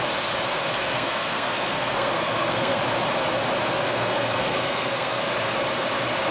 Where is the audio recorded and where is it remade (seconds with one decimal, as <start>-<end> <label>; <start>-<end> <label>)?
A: 0.0-0.7 recorded; 0.7-2.8 remade; 2.8-3.8 recorded; 3.8-5.2 remade; 5.2-6.3 recorded